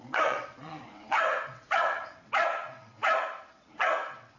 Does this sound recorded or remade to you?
remade